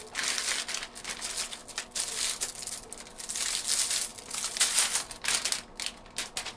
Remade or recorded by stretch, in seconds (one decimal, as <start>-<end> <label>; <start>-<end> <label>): 0.0-1.6 recorded; 1.6-2.7 remade; 2.7-4.1 recorded; 4.1-6.6 remade